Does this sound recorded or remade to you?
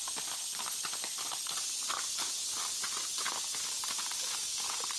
recorded